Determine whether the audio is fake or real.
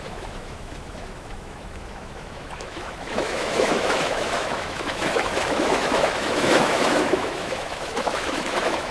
fake